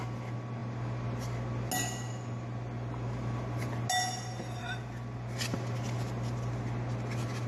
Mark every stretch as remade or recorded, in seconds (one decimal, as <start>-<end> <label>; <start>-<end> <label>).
0.0-7.5 recorded